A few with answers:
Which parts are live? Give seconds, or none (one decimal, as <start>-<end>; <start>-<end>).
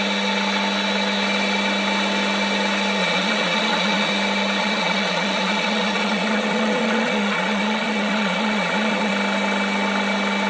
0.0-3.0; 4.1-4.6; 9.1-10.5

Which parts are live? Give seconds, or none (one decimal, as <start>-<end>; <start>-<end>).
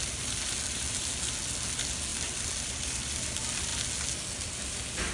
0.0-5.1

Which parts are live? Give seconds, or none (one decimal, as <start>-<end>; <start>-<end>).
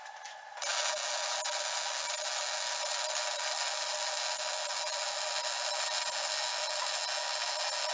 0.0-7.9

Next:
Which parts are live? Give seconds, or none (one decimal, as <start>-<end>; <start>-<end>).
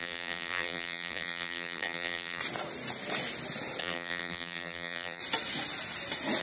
2.4-3.8; 5.2-6.4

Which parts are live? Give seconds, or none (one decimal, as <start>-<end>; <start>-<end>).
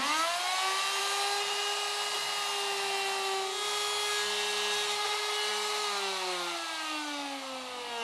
0.0-8.0